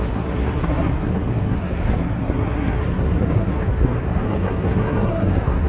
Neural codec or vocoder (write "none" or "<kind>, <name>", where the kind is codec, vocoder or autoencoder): codec, SNAC